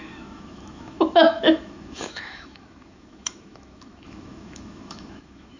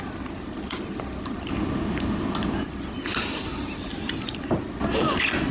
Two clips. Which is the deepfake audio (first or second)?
first